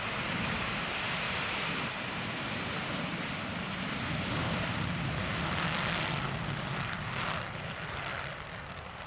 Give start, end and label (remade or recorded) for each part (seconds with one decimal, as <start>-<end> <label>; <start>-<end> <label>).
0.0-9.1 remade